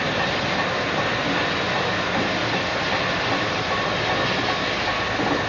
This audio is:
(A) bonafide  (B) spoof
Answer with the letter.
A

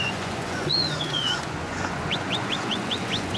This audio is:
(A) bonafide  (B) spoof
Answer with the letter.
B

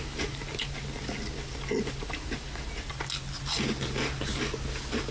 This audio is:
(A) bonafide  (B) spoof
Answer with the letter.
A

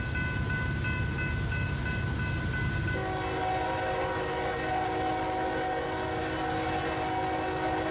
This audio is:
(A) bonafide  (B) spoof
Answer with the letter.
A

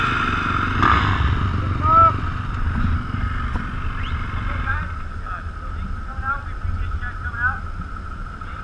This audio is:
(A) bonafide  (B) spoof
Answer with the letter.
A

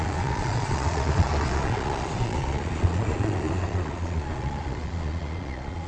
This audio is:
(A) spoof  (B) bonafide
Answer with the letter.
A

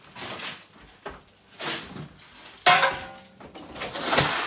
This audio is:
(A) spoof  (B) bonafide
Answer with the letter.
B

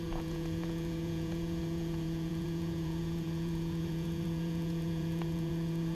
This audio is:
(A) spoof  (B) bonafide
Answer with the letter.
A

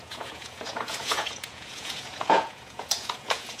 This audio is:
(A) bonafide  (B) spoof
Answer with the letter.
B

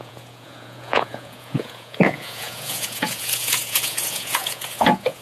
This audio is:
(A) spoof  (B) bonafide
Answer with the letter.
A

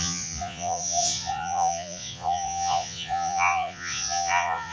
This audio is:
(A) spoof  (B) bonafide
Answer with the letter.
A